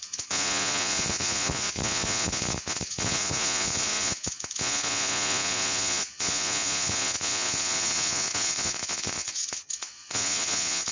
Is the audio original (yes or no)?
no